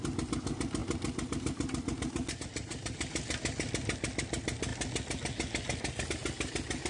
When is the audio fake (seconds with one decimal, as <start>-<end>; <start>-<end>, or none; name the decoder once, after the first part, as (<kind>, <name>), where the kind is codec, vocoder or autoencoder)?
none

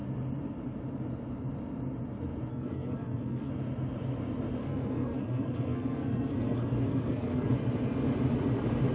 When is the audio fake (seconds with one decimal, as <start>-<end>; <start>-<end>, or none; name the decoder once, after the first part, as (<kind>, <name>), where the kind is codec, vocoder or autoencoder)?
2.5-3.5 (codec, SNAC); 4.6-7.5

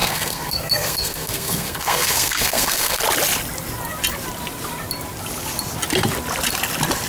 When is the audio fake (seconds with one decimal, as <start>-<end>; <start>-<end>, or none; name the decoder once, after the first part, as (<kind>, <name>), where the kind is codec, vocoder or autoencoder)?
0.0-3.0 (codec, SNAC)

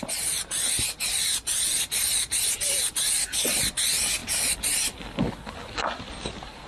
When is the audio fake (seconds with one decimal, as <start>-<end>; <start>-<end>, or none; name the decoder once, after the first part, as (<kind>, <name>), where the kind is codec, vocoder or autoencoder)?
none

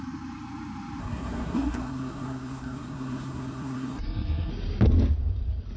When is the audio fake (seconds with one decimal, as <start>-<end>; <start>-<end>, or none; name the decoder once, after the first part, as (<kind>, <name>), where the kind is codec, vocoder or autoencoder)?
1.0-4.5 (codec, SNAC)

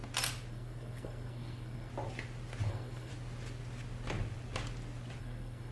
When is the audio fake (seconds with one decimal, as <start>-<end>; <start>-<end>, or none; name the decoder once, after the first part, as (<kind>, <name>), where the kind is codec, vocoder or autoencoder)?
0.5-1.9 (codec, SNAC); 2.7-3.1; 5.2-5.7

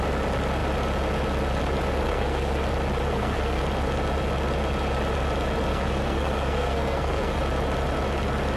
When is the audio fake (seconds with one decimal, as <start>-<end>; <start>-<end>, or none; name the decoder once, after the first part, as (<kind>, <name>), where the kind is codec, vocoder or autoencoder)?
2.0-2.6 (codec, SNAC); 3.1-3.6; 5.7-7.4